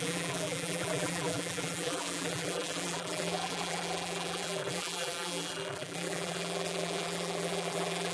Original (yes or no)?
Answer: no